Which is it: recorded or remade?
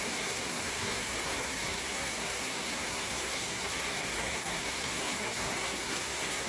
remade